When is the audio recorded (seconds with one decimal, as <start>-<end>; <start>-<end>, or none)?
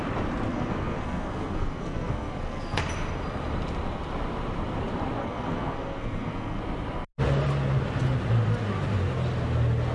0.0-0.5; 2.8-5.2; 6.6-9.9